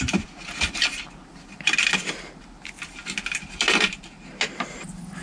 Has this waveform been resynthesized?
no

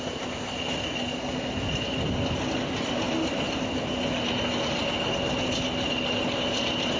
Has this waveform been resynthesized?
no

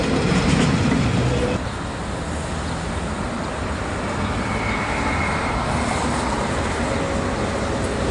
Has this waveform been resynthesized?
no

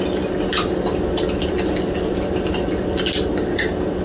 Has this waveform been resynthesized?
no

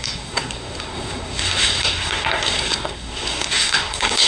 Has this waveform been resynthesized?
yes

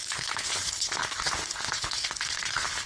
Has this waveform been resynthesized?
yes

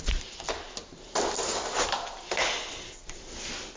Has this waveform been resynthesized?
no